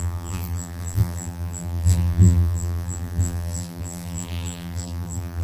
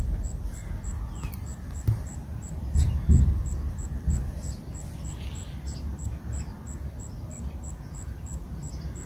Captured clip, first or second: second